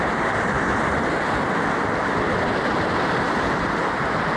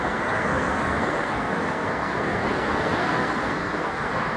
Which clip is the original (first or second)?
first